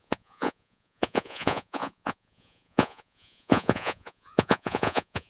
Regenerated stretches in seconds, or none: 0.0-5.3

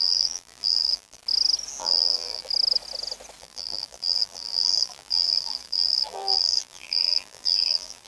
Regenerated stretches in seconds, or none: 0.0-1.2; 1.8-2.5; 3.4-8.1

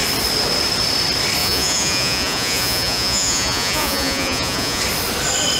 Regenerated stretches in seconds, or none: 1.4-4.8

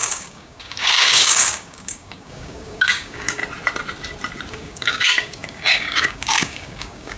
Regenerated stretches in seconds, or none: 0.0-3.4; 4.5-7.2

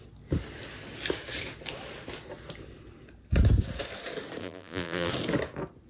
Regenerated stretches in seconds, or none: 4.4-5.1

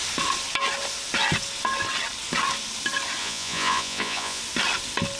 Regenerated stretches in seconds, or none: 3.2-4.4

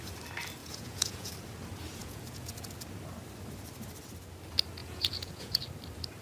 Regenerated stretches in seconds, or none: 0.6-1.3; 2.0-2.6; 4.8-5.6

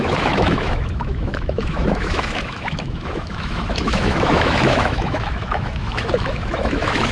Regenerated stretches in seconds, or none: 0.0-7.1